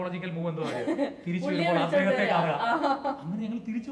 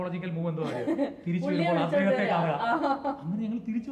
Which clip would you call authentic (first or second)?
second